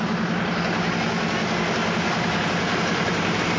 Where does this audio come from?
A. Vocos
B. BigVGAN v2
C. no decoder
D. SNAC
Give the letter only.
C